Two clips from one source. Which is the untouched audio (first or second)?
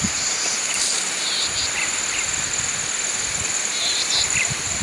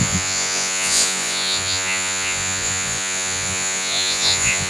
first